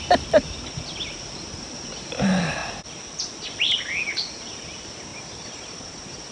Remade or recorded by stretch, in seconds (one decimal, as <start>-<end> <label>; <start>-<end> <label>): 0.0-6.3 recorded